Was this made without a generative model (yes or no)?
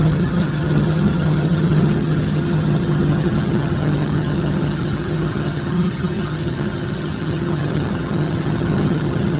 no